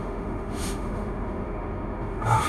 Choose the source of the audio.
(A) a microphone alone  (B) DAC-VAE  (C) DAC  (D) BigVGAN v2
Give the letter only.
B